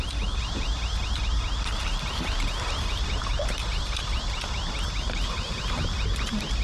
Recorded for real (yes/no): yes